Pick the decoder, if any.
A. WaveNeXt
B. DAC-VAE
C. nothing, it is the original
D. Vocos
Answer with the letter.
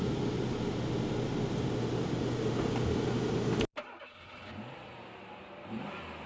C